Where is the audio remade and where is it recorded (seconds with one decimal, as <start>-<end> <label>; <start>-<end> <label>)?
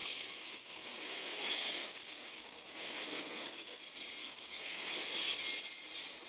0.0-3.8 remade; 3.8-4.2 recorded; 4.2-4.9 remade; 4.9-6.3 recorded